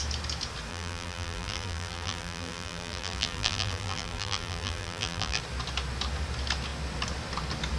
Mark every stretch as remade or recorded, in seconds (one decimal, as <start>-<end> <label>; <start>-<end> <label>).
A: 0.0-0.7 recorded; 0.7-5.4 remade; 5.4-7.8 recorded